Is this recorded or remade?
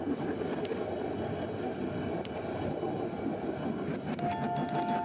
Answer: recorded